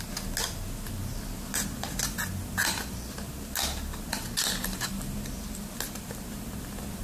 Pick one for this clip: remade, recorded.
recorded